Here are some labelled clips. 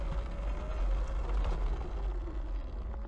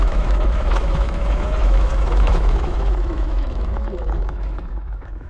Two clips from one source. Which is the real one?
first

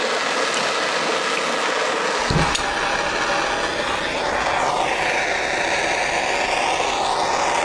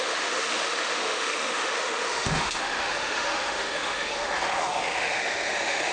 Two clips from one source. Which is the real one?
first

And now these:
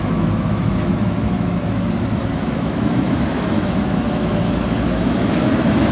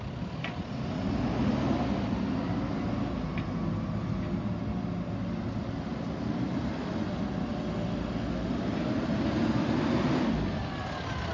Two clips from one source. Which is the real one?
second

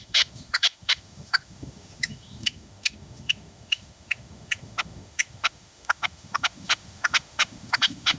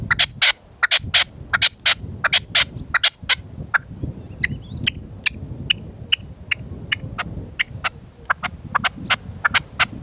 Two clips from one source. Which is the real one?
second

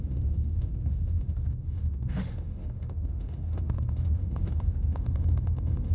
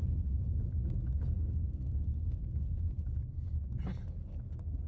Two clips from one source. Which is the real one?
second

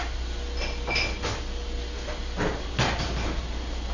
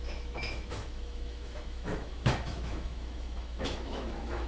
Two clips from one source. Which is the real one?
first